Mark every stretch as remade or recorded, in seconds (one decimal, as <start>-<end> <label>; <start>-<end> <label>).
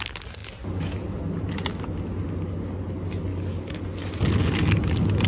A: 0.0-3.3 recorded; 3.3-3.8 remade; 3.8-5.3 recorded